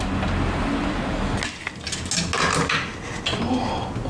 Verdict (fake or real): real